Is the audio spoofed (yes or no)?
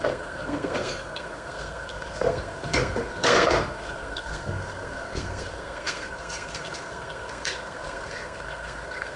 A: yes